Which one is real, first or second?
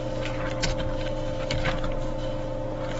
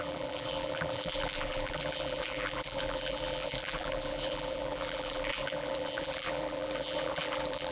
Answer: first